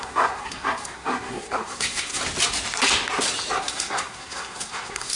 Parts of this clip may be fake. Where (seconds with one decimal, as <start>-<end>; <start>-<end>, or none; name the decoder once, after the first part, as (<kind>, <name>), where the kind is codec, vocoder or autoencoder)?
0.0-2.2 (codec, SNAC); 3.6-5.2